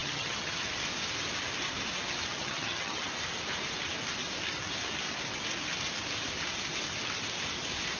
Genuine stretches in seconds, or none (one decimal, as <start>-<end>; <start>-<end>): 0.7-2.3; 3.0-8.0